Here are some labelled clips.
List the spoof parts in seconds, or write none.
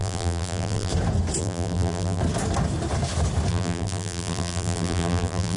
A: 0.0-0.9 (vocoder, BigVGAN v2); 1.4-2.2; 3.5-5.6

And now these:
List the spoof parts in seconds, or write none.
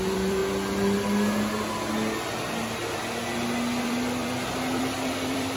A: 0.0-0.4 (vocoder, BigVGAN v2); 3.8-5.6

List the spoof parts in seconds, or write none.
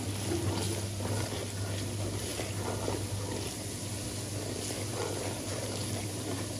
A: 5.5-6.6 (vocoder, BigVGAN v2)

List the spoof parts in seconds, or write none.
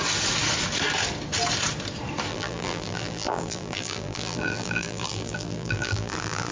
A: 2.3-6.5 (vocoder, BigVGAN v2)